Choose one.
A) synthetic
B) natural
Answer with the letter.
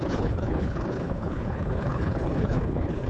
A